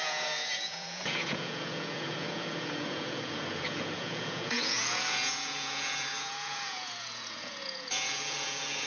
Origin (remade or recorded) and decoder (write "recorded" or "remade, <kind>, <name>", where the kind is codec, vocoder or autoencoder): remade, vocoder, Vocos